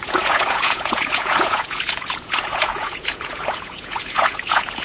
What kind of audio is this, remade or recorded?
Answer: remade